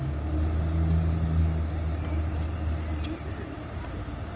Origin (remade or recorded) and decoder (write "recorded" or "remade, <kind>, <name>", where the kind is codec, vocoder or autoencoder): recorded